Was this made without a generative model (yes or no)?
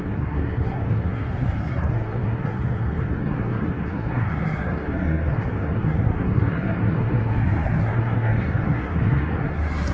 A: no